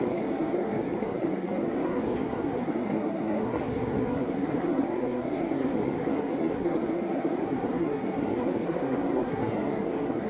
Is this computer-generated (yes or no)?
yes